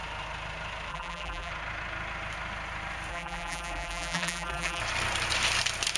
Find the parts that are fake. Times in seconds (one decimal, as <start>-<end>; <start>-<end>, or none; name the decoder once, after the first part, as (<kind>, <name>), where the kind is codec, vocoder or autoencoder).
0.9-1.5 (vocoder, BigVGAN v2); 3.1-4.8